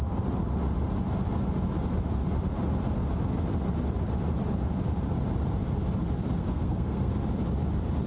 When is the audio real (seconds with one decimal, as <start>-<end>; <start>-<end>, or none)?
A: 0.0-6.4; 7.1-8.1